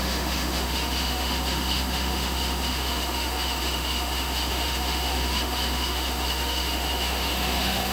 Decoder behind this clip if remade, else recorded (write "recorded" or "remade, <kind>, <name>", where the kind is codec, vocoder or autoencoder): remade, autoencoder, DAC-VAE